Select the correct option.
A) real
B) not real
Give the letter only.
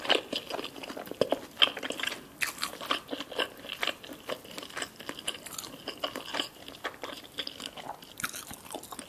A